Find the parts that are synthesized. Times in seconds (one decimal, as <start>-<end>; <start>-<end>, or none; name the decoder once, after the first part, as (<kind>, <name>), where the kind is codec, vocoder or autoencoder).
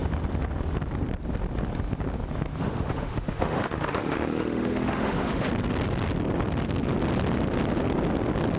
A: 2.6-5.5 (autoencoder, DAC-VAE)